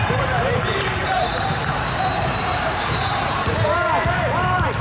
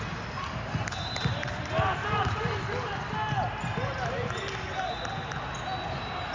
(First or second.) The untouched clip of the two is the second